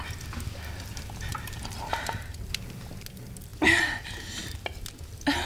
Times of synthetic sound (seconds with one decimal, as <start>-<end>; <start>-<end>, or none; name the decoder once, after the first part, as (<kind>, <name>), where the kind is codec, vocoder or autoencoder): 1.3-2.9 (vocoder, BigVGAN v2)